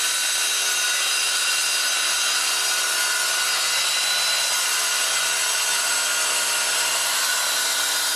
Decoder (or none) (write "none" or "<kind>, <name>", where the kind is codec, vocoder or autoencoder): none